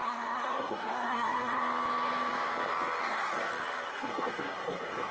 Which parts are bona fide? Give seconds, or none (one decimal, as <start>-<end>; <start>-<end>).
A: 1.6-3.0; 3.5-3.9